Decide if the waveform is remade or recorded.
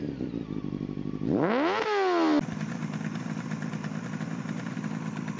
recorded